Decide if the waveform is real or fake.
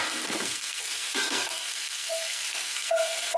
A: fake